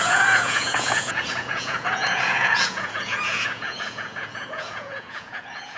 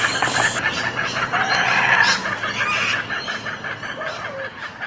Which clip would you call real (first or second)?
second